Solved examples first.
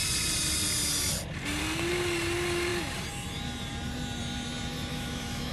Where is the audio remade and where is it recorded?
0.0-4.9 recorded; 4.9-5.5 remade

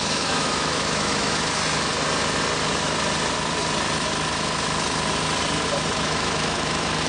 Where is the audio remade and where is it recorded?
0.0-1.6 remade; 1.6-5.9 recorded; 5.9-7.1 remade

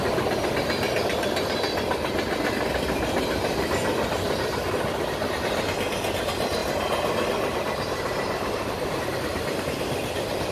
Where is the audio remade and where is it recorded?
0.0-10.5 recorded

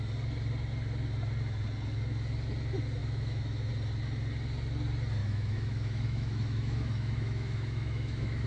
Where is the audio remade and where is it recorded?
0.0-3.0 recorded; 3.0-3.7 remade; 3.7-5.2 recorded; 5.2-8.5 remade

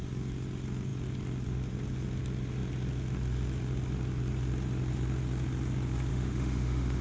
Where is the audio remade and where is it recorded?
0.0-6.1 recorded; 6.1-7.0 remade

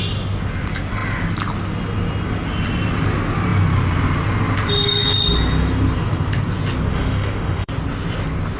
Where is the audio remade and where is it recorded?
0.0-6.9 recorded; 6.9-7.7 remade; 7.7-8.6 recorded